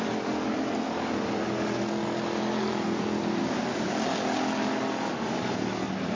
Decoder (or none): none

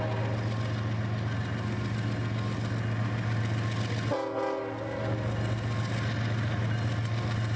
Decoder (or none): none